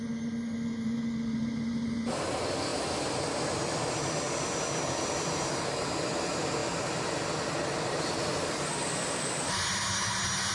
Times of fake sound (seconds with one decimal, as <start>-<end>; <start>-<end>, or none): none